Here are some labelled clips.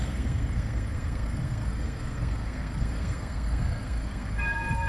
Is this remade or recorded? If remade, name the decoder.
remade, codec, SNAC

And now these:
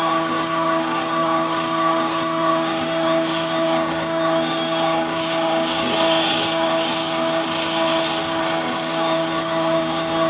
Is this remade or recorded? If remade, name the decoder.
remade, autoencoder, DAC-VAE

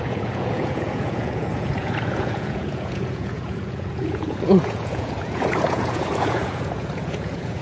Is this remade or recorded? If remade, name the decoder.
remade, vocoder, Vocos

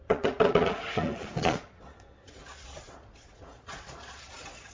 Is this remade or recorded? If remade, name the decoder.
remade, vocoder, Vocos